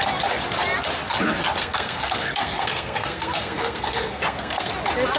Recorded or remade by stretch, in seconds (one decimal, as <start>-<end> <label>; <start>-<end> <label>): 0.0-1.6 recorded; 1.6-4.7 remade; 4.7-5.2 recorded